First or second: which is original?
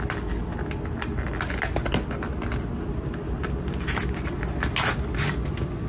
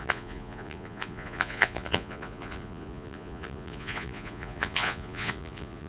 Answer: first